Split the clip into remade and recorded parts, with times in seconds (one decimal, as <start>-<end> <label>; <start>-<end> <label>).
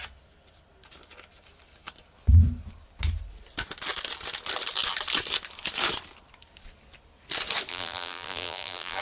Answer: 0.0-7.7 recorded; 7.7-9.0 remade